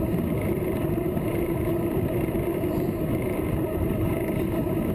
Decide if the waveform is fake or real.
fake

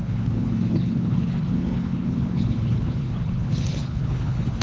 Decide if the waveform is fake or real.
fake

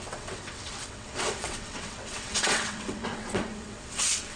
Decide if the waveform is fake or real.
fake